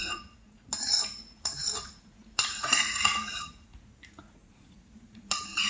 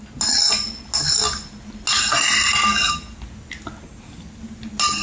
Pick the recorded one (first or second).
second